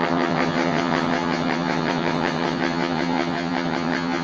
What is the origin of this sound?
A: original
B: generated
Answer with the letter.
B